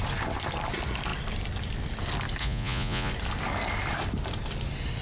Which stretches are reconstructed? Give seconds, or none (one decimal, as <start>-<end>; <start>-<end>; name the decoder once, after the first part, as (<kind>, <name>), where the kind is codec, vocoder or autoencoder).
2.4-3.1 (vocoder, Vocos)